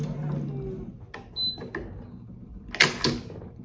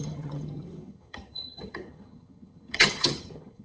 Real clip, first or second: first